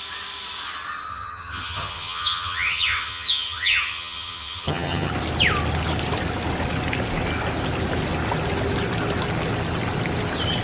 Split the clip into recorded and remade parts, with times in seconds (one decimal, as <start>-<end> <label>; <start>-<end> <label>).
0.0-1.1 recorded; 1.1-5.1 remade; 5.1-10.6 recorded